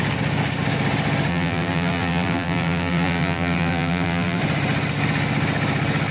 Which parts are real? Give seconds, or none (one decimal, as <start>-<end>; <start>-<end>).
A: 0.0-1.3; 4.4-6.1